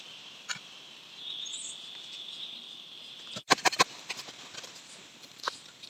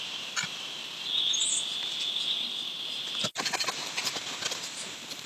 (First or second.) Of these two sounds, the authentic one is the second